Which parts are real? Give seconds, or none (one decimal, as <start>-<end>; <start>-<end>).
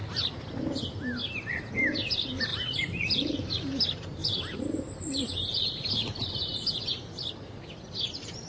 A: 0.0-1.2; 1.7-2.5; 3.7-4.2; 6.9-8.5